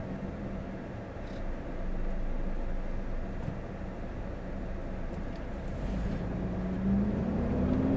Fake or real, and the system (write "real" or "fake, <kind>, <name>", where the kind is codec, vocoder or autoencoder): real